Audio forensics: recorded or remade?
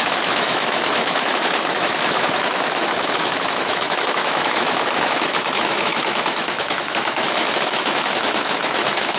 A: remade